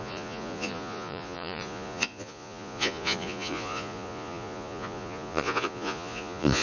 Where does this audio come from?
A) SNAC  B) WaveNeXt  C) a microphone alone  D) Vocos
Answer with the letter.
D